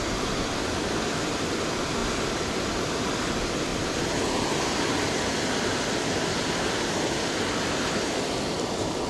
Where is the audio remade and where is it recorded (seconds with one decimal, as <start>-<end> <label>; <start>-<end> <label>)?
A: 0.0-9.1 recorded